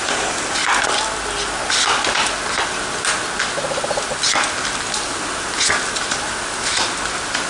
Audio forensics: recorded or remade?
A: recorded